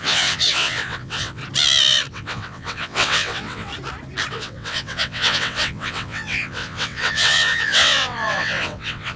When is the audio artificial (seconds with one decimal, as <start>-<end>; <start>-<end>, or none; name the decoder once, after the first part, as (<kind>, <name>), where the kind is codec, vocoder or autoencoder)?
0.0-1.4 (vocoder, WaveNeXt); 2.1-3.7; 4.3-9.2